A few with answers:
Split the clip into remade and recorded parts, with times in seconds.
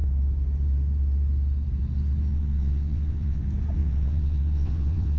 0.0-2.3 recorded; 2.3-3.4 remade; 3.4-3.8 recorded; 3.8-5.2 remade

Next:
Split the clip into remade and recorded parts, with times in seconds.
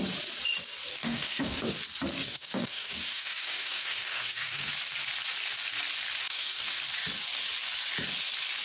0.0-0.9 recorded; 0.9-1.7 remade; 1.7-2.2 recorded; 2.2-4.7 remade; 4.7-6.2 recorded; 6.2-6.8 remade; 6.8-8.6 recorded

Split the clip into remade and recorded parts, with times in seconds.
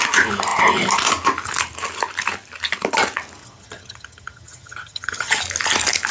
0.0-3.4 recorded; 3.4-5.4 remade; 5.4-6.1 recorded